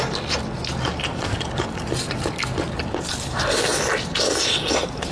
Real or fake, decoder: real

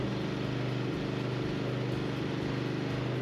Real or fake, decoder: real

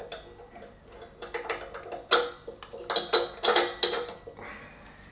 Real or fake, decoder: real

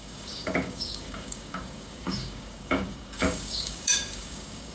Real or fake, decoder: fake, codec, DAC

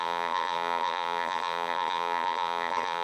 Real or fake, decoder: fake, vocoder, BigVGAN v2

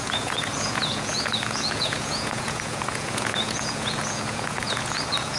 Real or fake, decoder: fake, vocoder, Vocos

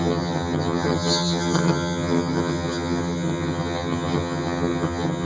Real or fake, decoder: fake, vocoder, HiFi-GAN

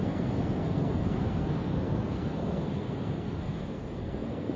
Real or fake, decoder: fake, codec, SNAC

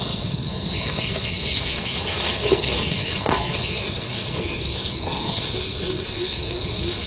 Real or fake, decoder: fake, codec, SNAC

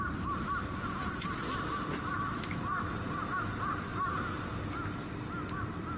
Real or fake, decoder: real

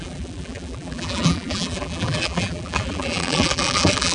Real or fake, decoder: fake, vocoder, BigVGAN v2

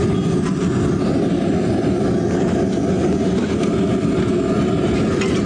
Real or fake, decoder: real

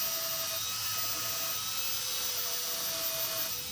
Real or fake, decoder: real